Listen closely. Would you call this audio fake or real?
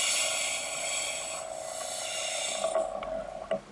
real